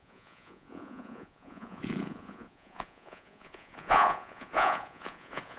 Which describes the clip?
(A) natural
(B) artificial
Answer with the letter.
B